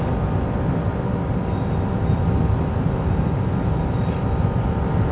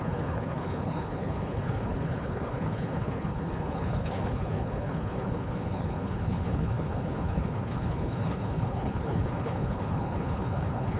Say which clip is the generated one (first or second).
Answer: second